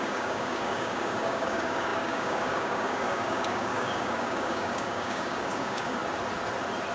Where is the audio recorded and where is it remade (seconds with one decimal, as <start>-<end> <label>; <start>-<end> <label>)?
0.0-6.0 remade; 6.0-6.9 recorded